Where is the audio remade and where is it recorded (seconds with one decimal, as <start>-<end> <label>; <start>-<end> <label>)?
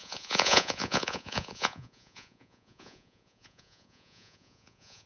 0.0-5.1 remade